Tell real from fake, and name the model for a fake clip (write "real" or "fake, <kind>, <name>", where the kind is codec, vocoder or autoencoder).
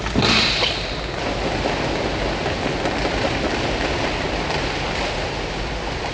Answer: real